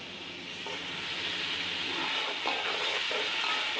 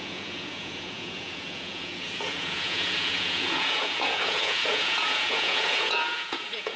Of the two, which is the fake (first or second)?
second